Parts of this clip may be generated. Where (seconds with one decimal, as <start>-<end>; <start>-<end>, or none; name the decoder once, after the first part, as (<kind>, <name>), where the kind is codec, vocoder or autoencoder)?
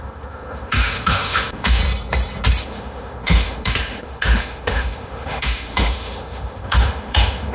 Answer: 0.0-1.8 (autoencoder, DAC-VAE); 2.6-7.5